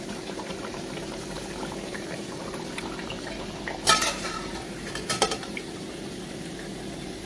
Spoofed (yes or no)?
yes